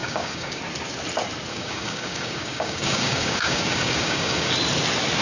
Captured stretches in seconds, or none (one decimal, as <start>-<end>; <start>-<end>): 0.6-1.5; 4.5-5.2